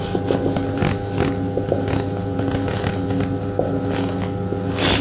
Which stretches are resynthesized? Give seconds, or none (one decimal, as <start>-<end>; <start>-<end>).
none